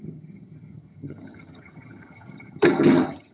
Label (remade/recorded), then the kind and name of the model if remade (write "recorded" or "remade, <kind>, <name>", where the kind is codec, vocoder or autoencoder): remade, vocoder, HiFi-GAN